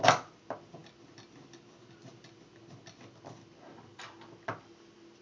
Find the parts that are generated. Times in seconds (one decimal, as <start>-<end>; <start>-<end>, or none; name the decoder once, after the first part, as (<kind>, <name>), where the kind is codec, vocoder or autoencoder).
none